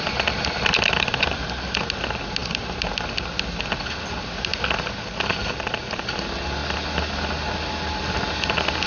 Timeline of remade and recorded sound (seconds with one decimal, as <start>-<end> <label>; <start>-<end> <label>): 0.0-8.9 recorded

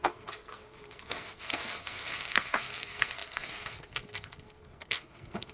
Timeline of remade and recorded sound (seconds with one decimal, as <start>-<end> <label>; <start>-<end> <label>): 0.0-5.5 remade